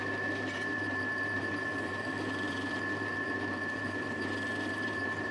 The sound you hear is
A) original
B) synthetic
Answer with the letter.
B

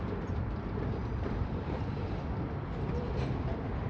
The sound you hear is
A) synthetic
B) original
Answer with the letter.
A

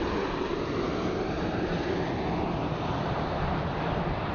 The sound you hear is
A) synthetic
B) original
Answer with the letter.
B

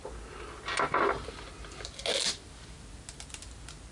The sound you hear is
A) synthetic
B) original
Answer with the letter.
B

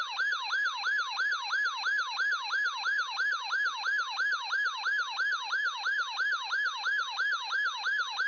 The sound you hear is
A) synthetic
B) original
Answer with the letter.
A